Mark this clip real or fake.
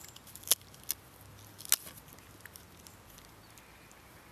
real